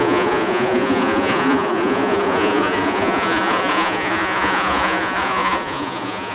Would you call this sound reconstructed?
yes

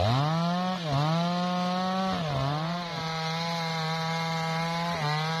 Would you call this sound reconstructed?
no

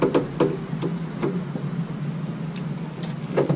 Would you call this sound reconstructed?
no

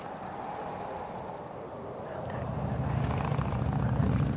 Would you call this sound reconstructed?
no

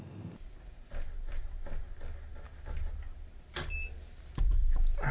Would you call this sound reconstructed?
no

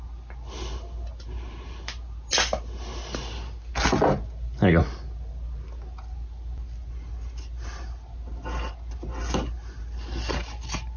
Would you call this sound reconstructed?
no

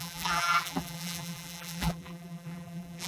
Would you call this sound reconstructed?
yes